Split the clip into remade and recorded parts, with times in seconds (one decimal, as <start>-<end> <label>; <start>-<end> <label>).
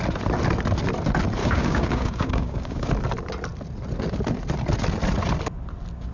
0.0-1.4 recorded; 1.4-2.9 remade; 2.9-6.1 recorded